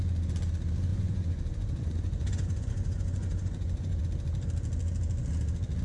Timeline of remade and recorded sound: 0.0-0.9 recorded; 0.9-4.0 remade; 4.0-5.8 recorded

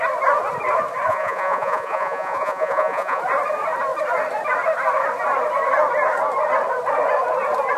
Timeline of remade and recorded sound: 0.0-1.1 recorded; 1.1-3.2 remade; 3.2-7.8 recorded

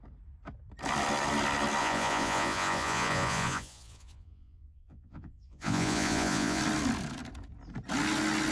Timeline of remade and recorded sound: 0.0-1.8 recorded; 1.8-6.6 remade; 6.6-8.5 recorded

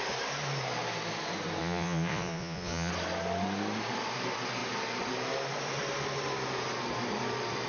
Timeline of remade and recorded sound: 0.0-1.6 recorded; 1.6-2.9 remade; 2.9-7.7 recorded

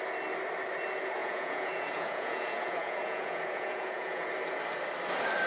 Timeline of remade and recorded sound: 0.0-1.2 recorded; 1.2-4.3 remade; 4.3-5.5 recorded

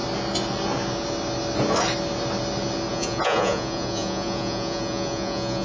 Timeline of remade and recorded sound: 0.0-2.9 recorded; 2.9-5.6 remade